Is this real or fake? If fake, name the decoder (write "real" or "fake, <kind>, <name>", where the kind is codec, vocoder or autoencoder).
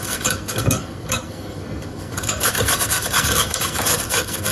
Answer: fake, codec, SNAC